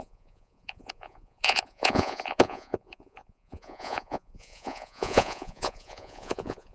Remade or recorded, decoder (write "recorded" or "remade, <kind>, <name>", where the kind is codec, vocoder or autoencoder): remade, vocoder, Vocos